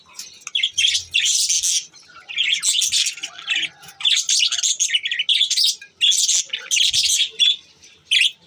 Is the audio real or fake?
real